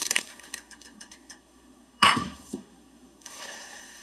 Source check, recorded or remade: remade